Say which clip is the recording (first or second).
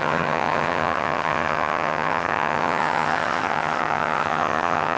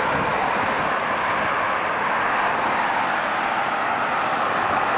second